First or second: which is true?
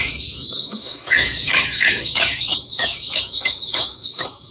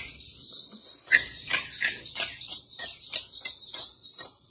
second